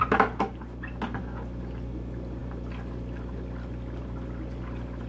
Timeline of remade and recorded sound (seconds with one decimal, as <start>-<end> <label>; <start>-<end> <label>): 0.0-5.1 recorded